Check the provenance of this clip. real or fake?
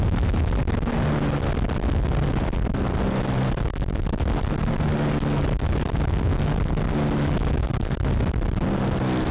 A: real